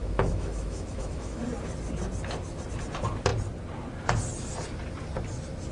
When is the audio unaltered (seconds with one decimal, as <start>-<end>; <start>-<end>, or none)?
1.4-5.7